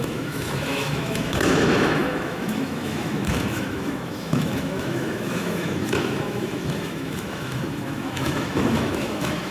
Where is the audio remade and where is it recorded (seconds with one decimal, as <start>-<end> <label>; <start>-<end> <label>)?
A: 0.0-9.5 remade